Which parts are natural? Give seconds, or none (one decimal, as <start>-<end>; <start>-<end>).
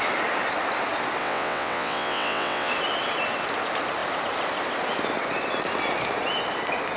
0.0-1.2; 2.7-7.0